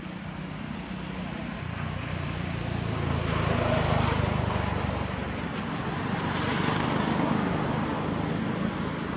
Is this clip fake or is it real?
real